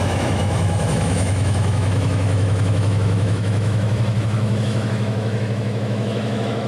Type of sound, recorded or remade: remade